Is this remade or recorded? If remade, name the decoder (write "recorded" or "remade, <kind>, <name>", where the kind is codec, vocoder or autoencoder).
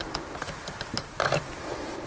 recorded